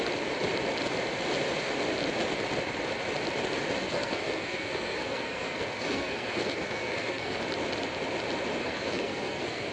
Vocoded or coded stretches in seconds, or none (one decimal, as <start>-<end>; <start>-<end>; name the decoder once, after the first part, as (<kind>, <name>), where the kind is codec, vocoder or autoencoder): 3.8-7.4 (codec, SNAC); 8.6-9.7